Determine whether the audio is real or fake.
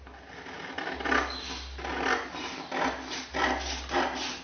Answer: real